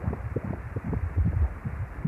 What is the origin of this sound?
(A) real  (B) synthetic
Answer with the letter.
A